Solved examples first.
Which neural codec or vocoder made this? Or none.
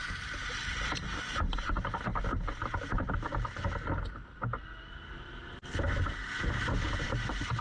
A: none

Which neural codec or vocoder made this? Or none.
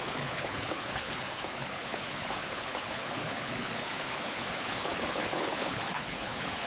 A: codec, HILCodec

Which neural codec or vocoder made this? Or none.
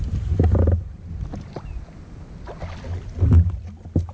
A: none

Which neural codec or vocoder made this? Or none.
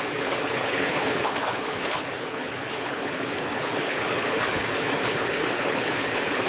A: codec, HILCodec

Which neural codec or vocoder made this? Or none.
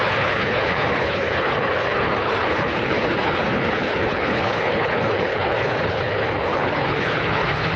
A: codec, HILCodec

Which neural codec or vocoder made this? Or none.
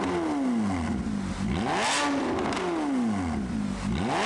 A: none